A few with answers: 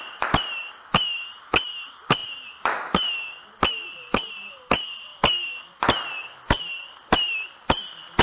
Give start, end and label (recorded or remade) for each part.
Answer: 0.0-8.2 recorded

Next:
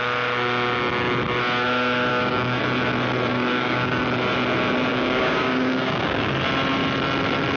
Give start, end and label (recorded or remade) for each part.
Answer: 0.0-2.1 recorded; 2.1-2.6 remade; 2.6-3.3 recorded; 3.3-4.0 remade; 4.0-4.9 recorded; 4.9-6.3 remade; 6.3-7.6 recorded

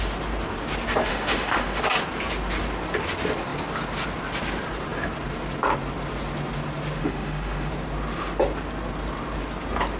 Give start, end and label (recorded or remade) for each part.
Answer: 0.0-1.1 recorded; 1.1-1.8 remade; 1.8-7.0 recorded; 7.0-7.7 remade; 7.7-10.0 recorded

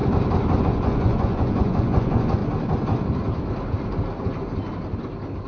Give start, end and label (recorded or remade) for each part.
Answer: 0.0-0.6 recorded; 0.6-2.4 remade; 2.4-5.5 recorded

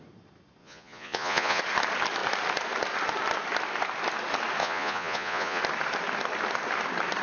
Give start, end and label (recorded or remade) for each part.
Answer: 0.0-0.6 recorded; 0.6-1.6 remade; 1.6-4.6 recorded; 4.6-5.6 remade; 5.6-7.2 recorded

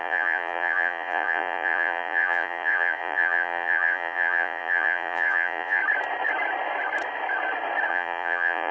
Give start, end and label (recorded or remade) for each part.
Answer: 0.0-5.8 remade; 5.8-7.9 recorded; 7.9-8.7 remade